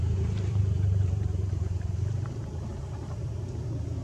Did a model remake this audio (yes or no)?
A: yes